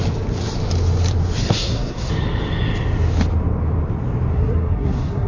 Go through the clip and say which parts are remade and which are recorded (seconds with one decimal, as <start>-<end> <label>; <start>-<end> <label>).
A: 0.0-1.4 recorded; 1.4-2.1 remade; 2.1-4.3 recorded; 4.3-5.3 remade